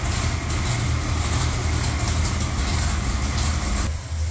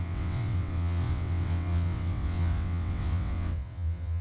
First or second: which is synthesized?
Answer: second